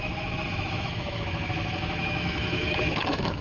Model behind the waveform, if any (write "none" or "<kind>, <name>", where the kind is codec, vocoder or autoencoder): autoencoder, DAC-VAE